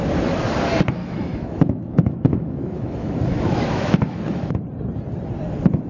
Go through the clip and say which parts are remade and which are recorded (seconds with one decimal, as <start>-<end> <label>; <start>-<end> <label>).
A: 0.0-1.0 recorded; 1.0-4.5 remade; 4.5-5.9 recorded